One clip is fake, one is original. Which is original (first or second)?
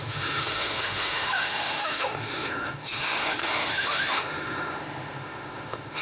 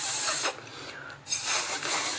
second